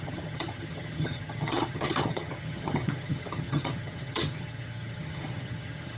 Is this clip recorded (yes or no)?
no